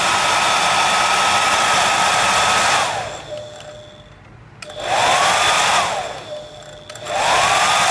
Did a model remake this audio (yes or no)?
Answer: no